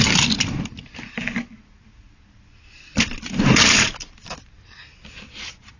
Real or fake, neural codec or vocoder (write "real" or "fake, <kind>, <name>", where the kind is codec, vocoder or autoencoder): real